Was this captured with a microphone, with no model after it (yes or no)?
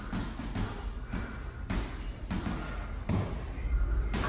yes